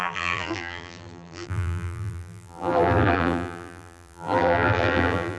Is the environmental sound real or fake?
fake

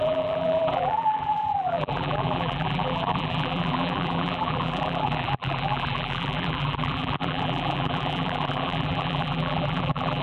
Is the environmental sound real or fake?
fake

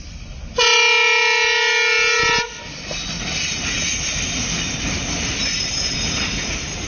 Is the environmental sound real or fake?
real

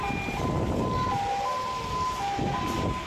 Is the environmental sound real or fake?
real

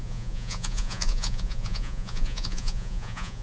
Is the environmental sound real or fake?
fake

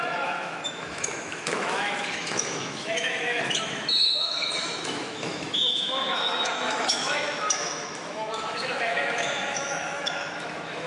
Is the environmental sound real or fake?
fake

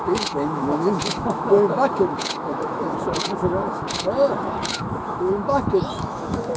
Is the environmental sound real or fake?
fake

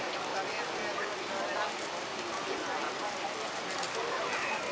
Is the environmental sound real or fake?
real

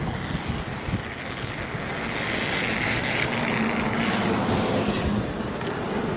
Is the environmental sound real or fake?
real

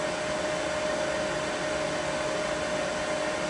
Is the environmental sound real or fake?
real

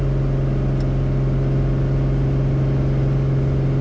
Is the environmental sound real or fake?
real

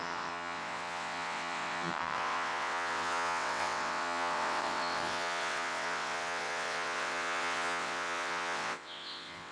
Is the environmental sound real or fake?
fake